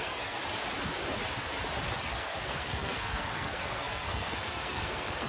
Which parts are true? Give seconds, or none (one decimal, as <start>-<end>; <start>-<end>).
0.4-2.1